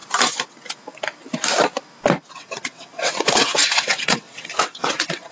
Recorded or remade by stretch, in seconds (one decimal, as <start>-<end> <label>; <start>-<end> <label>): 0.0-2.3 recorded; 2.3-5.3 remade